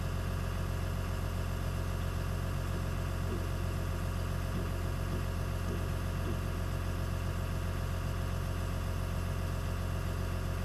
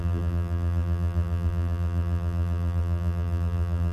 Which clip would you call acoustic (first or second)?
first